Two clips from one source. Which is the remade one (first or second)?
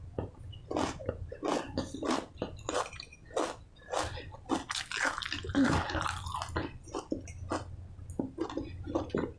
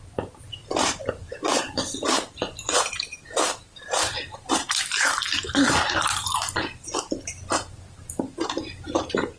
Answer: second